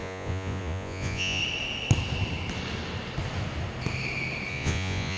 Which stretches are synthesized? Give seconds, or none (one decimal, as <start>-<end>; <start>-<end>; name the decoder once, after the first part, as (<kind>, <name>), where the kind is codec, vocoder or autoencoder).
0.0-1.4 (vocoder, Vocos); 4.5-5.2